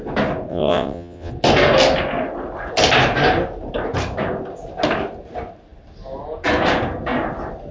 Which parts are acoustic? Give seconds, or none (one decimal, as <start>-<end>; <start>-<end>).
0.0-0.5; 1.3-7.7